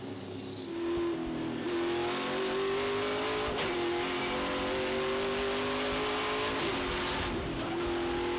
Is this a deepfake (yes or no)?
no